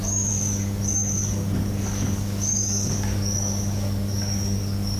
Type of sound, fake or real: fake